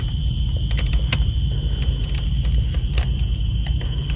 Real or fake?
fake